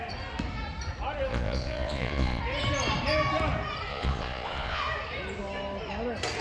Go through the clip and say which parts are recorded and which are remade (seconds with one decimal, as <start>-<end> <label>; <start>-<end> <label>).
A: 0.0-1.3 recorded; 1.3-2.4 remade; 2.4-3.9 recorded; 3.9-4.8 remade; 4.8-6.4 recorded